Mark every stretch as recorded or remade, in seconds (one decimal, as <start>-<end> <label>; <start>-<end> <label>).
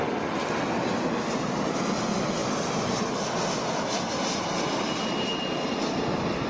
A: 0.0-2.4 recorded; 2.4-3.1 remade; 3.1-6.5 recorded